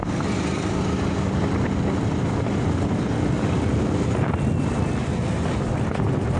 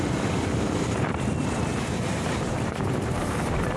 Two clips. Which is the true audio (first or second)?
first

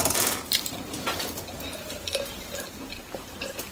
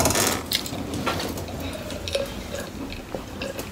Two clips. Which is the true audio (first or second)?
second